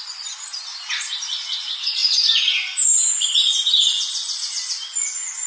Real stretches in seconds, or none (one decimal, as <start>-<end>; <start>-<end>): 0.0-5.5